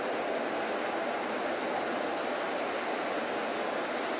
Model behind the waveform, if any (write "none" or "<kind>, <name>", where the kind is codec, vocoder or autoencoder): none